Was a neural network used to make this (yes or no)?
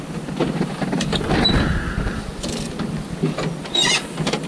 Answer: no